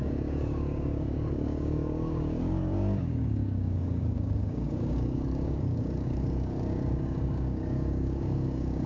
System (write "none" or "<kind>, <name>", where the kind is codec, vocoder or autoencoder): codec, DAC